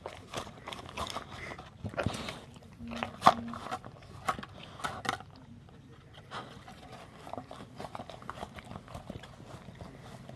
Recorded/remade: recorded